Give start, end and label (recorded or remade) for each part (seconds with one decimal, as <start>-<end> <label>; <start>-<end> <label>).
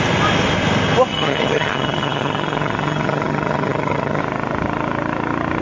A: 0.0-1.1 recorded; 1.1-4.2 remade; 4.2-5.6 recorded